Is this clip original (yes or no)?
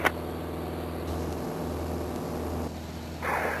yes